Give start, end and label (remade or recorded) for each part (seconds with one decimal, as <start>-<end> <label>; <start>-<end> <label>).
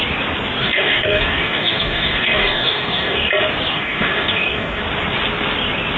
0.0-0.6 recorded; 0.6-3.3 remade; 3.3-3.7 recorded; 3.7-4.8 remade; 4.8-6.0 recorded